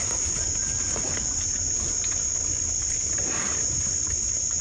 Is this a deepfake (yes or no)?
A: no